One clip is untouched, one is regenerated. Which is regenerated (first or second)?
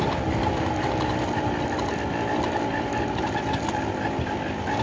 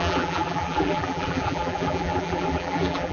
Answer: second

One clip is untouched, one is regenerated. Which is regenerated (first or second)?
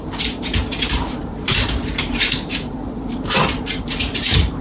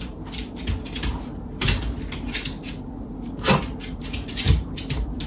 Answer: first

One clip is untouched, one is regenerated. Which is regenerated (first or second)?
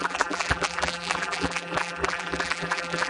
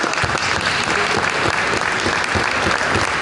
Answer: first